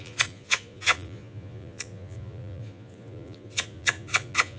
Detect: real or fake fake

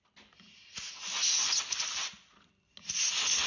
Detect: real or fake real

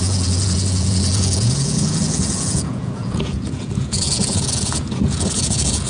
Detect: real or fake fake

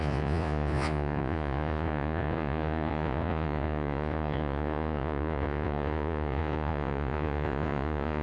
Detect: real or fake fake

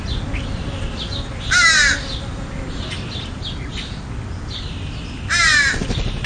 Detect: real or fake real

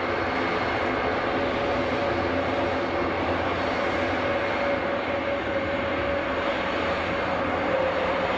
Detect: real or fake real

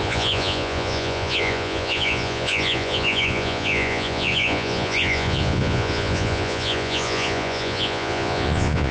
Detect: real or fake fake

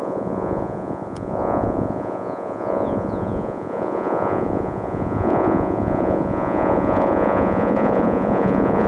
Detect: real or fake fake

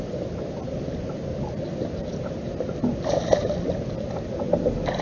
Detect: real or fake real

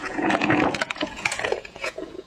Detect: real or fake fake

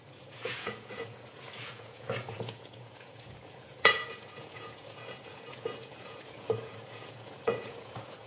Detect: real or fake fake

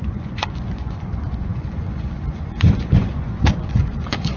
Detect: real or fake fake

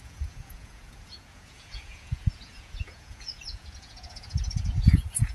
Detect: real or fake fake